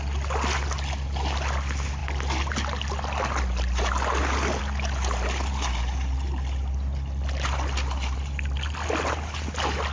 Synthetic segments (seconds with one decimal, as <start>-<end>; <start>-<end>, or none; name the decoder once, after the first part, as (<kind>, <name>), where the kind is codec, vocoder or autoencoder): none

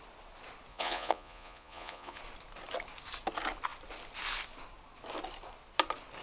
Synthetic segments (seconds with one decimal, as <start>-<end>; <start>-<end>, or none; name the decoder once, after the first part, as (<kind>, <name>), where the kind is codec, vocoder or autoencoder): 0.7-2.2 (vocoder, Vocos)